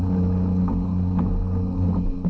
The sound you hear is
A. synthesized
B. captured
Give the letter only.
B